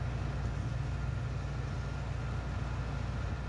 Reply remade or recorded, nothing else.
recorded